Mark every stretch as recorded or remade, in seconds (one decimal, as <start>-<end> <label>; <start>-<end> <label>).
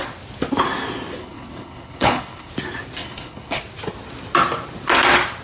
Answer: 0.0-1.2 recorded; 1.2-2.5 remade; 2.5-3.0 recorded; 3.0-3.6 remade; 3.6-5.4 recorded